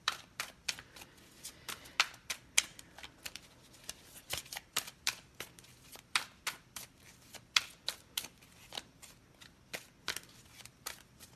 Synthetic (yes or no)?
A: no